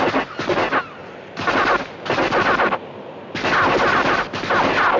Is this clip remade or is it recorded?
recorded